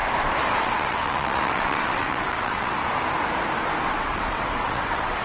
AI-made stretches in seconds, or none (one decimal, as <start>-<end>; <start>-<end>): 0.6-2.7; 4.0-5.2